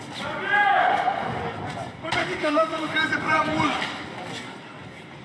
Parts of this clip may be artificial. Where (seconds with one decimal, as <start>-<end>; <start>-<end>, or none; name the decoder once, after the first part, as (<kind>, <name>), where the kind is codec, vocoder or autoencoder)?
0.8-1.4 (autoencoder, DAC-VAE); 2.2-2.9